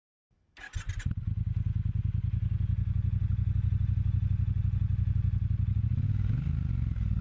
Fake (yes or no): no